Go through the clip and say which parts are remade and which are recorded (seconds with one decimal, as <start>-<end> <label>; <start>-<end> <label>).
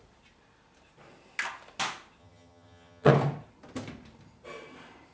0.0-2.2 recorded; 2.2-3.1 remade; 3.1-5.1 recorded